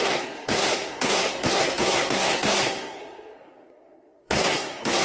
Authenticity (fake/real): fake